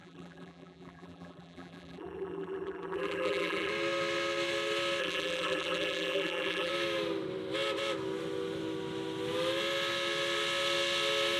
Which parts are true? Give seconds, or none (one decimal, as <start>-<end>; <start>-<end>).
3.7-5.0; 6.7-11.4